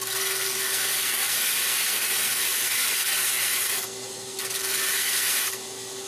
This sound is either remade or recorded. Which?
remade